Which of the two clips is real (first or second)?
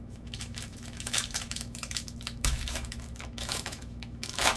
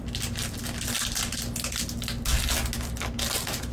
second